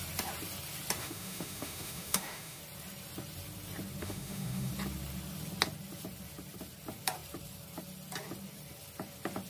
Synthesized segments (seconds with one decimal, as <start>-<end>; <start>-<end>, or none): 1.0-2.6; 4.0-4.7